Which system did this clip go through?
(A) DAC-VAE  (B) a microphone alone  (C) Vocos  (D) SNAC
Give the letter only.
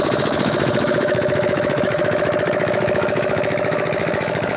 A